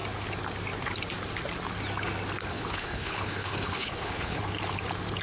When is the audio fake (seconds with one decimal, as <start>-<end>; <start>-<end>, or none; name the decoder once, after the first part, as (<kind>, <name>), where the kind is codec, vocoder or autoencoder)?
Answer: 2.5-4.4 (codec, HILCodec)